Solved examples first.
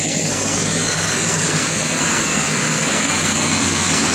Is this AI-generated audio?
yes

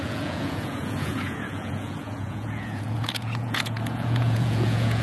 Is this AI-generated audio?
yes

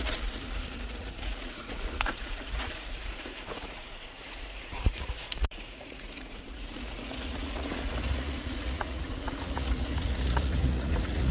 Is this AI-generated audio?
yes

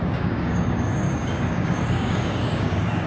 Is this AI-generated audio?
yes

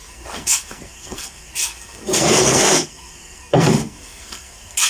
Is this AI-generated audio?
yes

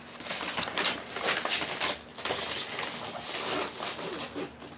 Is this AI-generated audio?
no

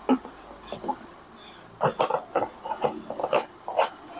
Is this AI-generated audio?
no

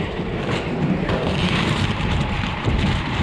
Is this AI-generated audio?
yes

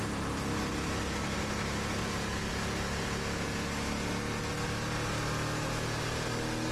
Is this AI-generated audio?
no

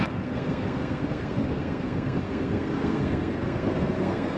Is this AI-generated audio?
yes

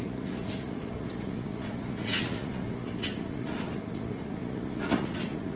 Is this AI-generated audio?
yes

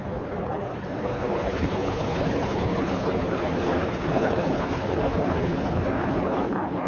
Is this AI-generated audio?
yes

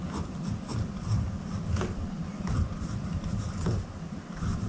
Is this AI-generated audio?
no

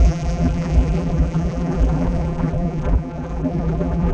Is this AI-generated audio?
yes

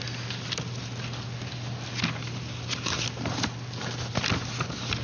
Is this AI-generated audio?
no